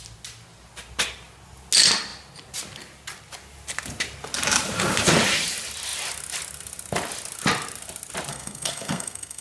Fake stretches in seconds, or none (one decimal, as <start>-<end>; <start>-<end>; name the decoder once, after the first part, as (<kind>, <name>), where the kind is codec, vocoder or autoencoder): 8.3-9.4 (codec, SNAC)